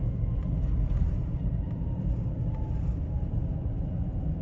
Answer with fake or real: real